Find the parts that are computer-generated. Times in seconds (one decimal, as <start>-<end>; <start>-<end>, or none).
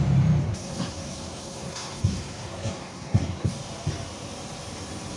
0.4-3.5